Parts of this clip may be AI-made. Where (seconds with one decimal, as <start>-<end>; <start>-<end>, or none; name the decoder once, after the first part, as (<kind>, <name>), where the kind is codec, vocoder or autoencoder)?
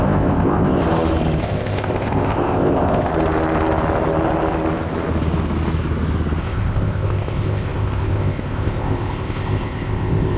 0.0-0.8 (codec, ZipCodec); 1.4-3.1; 6.4-10.4